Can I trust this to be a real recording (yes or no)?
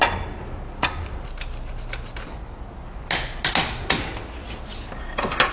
yes